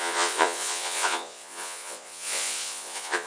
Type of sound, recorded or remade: remade